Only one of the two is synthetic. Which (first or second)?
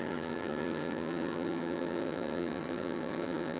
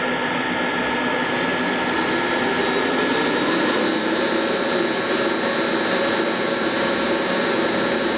first